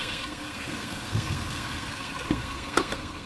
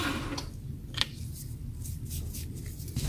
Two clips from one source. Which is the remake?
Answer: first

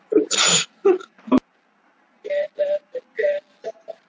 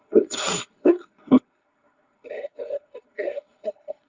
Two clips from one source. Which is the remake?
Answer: second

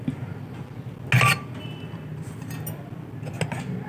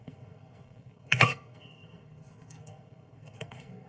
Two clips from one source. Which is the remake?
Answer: second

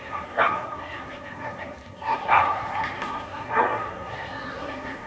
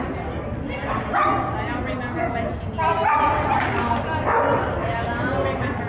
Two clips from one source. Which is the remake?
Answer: first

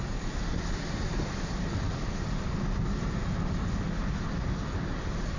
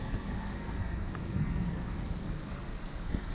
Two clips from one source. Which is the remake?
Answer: second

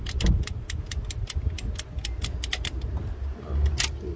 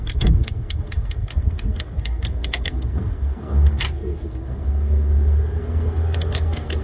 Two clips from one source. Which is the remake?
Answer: second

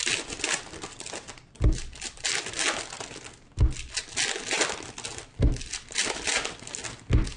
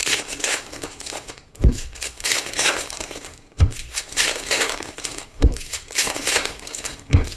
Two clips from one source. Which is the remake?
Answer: second